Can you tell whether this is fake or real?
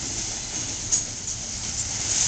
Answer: real